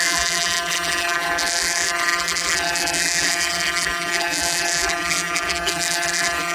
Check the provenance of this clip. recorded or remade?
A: remade